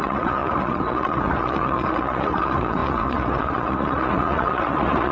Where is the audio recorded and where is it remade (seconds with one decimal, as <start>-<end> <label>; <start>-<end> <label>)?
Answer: 0.0-5.1 remade